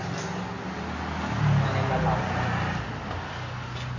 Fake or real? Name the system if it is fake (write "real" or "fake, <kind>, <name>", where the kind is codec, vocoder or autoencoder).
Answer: real